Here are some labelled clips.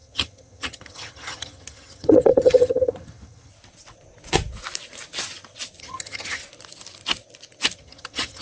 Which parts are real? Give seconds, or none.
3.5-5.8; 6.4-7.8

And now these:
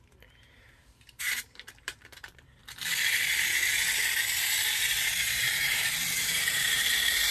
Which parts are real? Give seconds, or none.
2.6-4.9

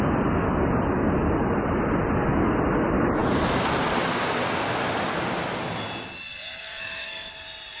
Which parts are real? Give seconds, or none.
0.0-6.6; 7.3-7.8

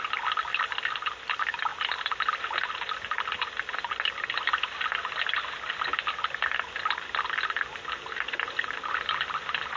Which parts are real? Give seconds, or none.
0.0-9.8